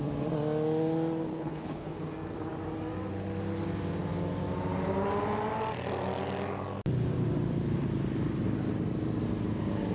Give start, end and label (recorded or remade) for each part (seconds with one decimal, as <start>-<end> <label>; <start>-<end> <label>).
0.0-1.3 recorded; 1.3-2.0 remade; 2.0-9.9 recorded